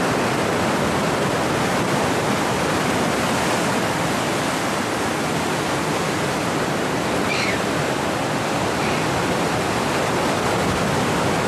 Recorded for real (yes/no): yes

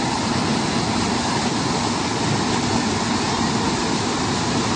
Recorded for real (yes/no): yes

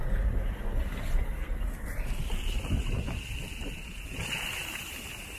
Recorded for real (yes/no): yes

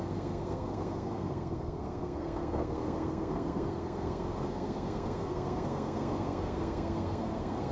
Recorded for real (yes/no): no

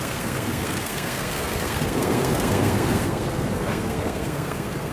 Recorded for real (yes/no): no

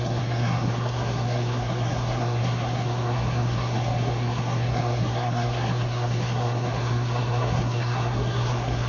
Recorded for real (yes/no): no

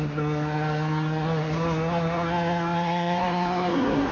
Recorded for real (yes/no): no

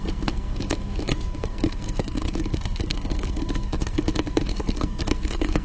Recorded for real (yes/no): no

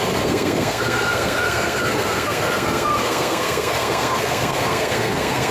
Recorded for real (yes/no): no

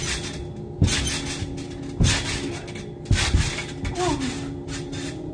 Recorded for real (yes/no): yes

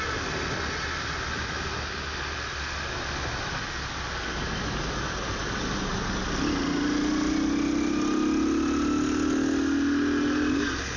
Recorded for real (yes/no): yes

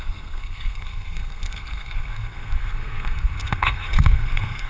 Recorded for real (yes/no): no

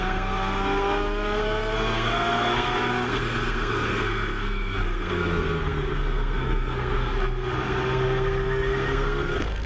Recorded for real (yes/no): no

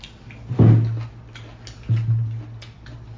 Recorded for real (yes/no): yes